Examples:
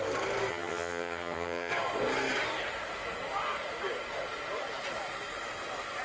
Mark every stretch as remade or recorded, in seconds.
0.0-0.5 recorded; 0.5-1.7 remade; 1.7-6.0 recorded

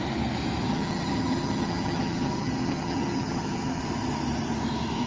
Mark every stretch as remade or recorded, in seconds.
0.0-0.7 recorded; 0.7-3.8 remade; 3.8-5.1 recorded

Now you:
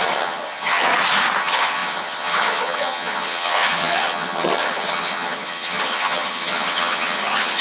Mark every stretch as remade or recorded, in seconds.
0.0-0.9 remade; 0.9-1.4 recorded; 1.4-7.6 remade

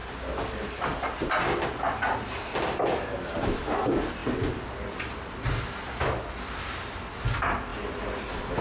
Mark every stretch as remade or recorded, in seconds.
0.0-8.6 recorded

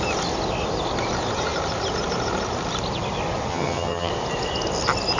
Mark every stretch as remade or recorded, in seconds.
0.0-3.5 recorded; 3.5-4.1 remade; 4.1-5.2 recorded

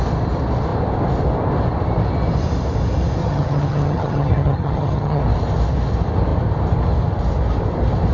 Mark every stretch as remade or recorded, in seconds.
0.0-3.2 recorded; 3.2-5.2 remade; 5.2-8.1 recorded